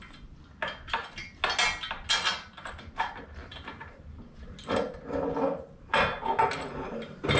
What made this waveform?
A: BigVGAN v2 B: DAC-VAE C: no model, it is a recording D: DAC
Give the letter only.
C